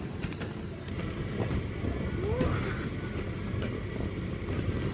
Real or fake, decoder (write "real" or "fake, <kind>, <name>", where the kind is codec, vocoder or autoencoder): real